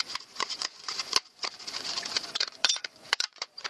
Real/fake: fake